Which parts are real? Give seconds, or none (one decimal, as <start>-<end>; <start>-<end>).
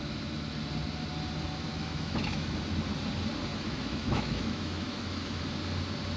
0.0-1.7; 2.6-3.5; 5.4-6.2